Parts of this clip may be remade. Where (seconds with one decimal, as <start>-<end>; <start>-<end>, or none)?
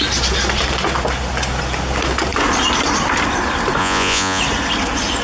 3.8-4.4